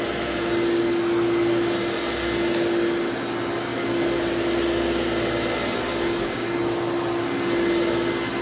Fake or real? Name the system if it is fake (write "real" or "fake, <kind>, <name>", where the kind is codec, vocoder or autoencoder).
real